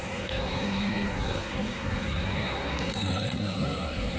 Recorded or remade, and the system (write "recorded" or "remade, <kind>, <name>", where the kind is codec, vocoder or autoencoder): remade, codec, SNAC